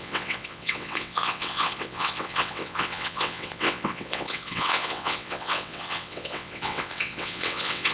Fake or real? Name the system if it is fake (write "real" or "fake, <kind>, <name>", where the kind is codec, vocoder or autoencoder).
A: fake, vocoder, WaveNeXt